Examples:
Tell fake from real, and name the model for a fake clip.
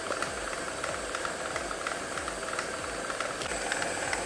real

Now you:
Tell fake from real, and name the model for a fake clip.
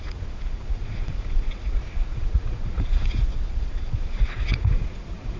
fake, vocoder, Vocos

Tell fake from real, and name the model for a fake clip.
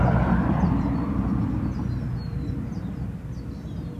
fake, vocoder, BigVGAN v2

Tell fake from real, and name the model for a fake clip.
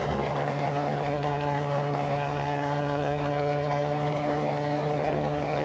fake, codec, SNAC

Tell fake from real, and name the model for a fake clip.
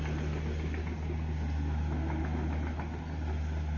real